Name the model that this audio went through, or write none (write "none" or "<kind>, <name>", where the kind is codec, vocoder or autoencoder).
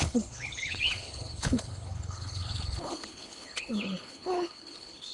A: codec, HILCodec